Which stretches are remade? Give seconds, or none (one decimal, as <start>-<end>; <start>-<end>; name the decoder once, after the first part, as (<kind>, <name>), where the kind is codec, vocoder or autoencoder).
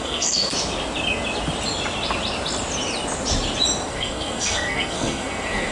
0.0-0.5 (codec, SNAC); 3.9-5.7